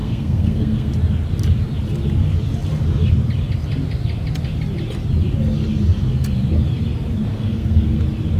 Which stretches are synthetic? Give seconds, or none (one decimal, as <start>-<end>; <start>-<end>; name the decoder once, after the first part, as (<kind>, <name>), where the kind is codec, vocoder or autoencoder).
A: 0.0-0.9 (codec, SNAC); 7.3-8.0